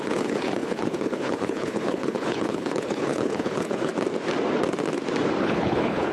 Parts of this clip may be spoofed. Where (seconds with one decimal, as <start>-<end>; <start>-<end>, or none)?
0.0-3.9; 5.4-6.1

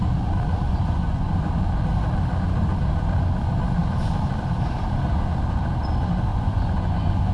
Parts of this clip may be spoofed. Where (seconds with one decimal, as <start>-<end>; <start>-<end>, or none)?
0.6-1.3; 6.3-7.3

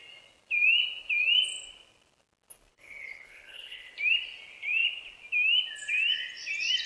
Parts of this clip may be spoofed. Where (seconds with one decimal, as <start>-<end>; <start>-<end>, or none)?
2.7-3.9

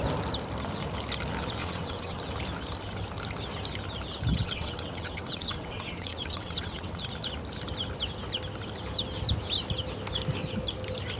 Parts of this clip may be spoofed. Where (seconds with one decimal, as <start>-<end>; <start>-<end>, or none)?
1.6-2.2; 4.3-7.0

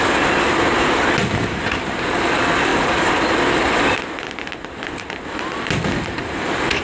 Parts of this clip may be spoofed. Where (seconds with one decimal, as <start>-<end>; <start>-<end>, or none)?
none

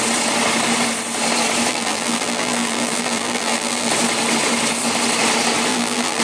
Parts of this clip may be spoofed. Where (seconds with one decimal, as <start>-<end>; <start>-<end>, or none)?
1.7-3.9; 5.7-6.2

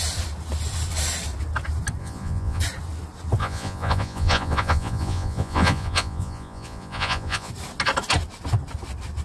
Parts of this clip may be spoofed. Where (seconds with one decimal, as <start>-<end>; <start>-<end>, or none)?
2.0-2.6; 3.4-7.5

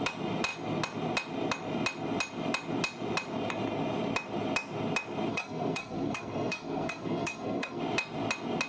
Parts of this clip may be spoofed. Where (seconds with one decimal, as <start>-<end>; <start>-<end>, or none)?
5.3-7.8